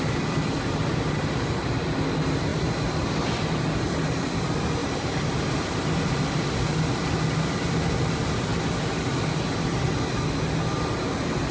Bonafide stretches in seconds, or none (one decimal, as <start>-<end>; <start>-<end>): 0.0-4.8; 6.2-11.5